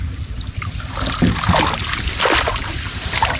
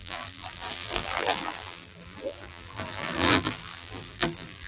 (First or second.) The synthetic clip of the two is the second